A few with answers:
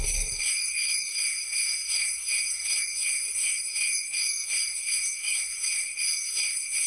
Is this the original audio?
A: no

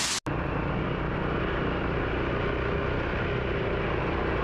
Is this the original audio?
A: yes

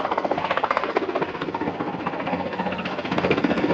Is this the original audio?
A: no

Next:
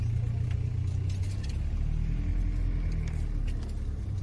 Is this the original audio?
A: yes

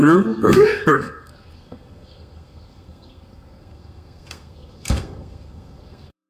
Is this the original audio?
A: no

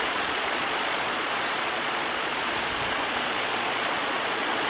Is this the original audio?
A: no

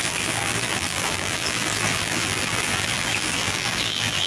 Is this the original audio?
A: no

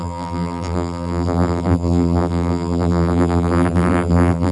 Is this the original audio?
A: no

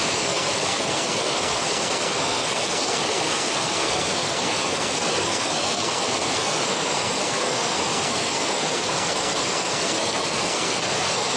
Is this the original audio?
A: no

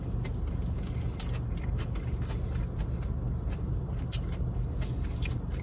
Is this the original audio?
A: yes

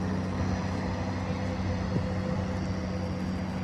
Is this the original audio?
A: yes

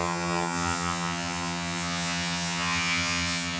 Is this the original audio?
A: no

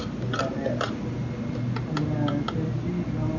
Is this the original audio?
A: yes